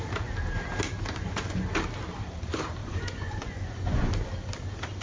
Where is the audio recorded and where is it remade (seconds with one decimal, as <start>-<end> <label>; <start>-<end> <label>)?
0.0-1.2 recorded; 1.2-1.8 remade; 1.8-2.8 recorded; 2.8-4.1 remade; 4.1-5.0 recorded